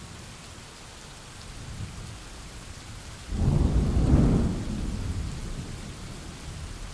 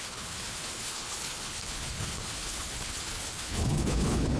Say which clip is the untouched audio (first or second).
first